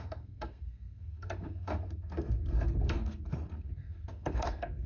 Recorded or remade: remade